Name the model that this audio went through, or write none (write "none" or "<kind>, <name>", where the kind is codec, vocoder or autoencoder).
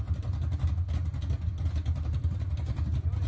none